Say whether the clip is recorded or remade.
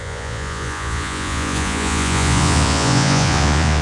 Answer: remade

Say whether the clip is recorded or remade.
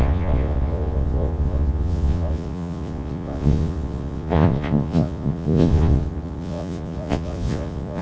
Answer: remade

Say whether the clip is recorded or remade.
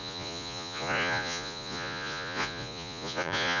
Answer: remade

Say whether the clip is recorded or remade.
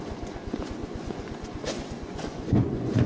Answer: remade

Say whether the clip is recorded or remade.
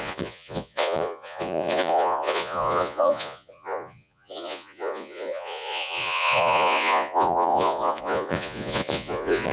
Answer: remade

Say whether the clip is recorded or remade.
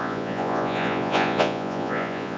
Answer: remade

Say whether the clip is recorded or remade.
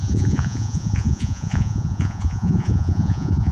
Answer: remade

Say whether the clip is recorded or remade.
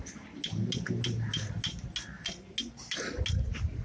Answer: recorded